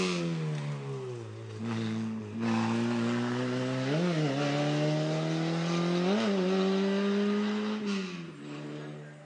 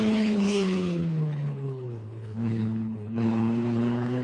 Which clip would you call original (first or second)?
first